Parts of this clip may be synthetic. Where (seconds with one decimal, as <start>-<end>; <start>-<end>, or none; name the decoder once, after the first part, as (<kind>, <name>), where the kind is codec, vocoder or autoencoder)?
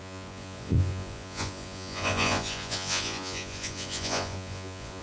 0.0-5.0 (vocoder, Vocos)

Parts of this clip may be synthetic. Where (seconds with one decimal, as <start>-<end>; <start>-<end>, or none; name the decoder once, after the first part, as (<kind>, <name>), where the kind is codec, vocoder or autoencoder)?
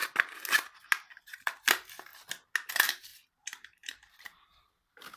1.2-2.1 (vocoder, BigVGAN v2); 2.7-5.2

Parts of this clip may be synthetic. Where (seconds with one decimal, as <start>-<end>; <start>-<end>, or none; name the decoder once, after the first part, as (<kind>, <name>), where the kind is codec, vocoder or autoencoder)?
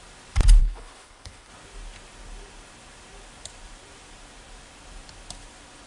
0.6-1.5 (codec, HILCodec)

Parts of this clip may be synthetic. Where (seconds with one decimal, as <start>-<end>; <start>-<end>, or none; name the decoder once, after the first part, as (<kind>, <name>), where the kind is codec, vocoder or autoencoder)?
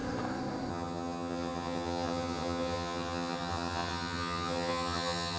0.7-5.4 (vocoder, HiFi-GAN)